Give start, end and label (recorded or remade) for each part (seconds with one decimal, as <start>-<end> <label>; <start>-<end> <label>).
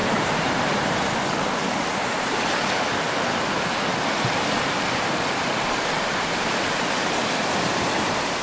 0.0-2.4 remade; 2.4-8.4 recorded